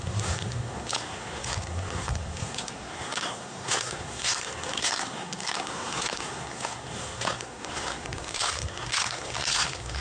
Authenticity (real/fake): fake